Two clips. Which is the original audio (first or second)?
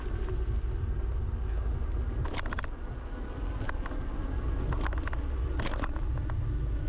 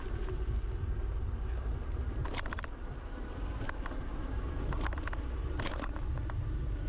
first